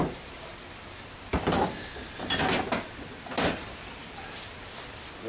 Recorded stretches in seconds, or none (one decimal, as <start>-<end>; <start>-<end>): 0.0-5.3